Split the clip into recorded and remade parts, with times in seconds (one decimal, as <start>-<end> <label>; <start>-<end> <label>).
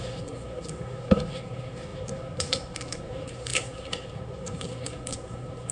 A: 0.0-5.7 remade